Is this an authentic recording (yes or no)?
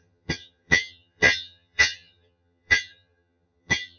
no